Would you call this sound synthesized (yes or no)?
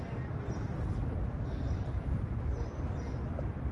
yes